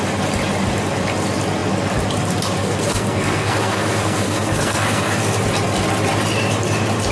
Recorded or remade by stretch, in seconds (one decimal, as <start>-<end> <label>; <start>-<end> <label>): 0.0-2.6 recorded; 2.6-5.2 remade; 5.2-7.1 recorded